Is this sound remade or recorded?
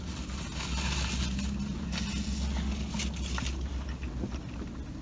recorded